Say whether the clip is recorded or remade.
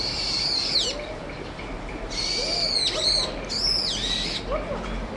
recorded